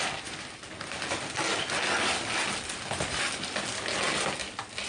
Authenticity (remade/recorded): recorded